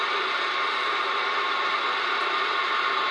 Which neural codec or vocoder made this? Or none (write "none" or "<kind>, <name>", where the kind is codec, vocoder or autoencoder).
vocoder, BigVGAN v2